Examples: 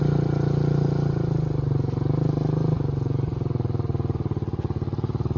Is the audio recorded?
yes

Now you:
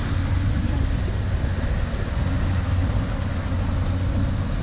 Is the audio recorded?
yes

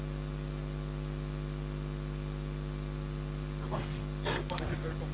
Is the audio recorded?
yes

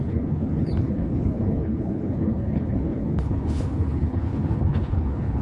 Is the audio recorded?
no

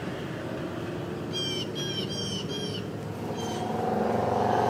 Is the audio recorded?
yes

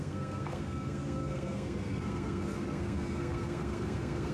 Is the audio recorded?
no